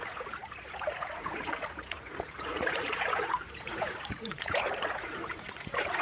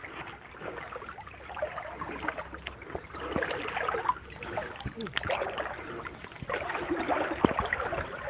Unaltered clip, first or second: second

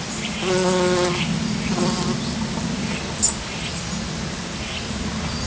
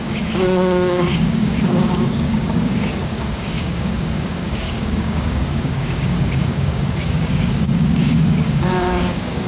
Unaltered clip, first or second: first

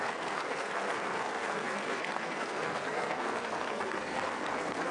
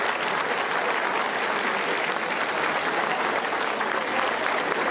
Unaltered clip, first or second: second